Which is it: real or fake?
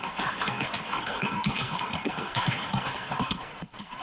fake